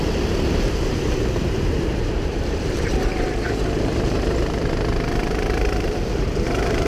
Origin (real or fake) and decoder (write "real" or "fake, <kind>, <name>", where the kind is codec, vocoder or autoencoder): fake, vocoder, BigVGAN v2